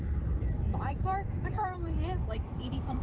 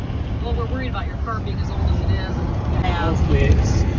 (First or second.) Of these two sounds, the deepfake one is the first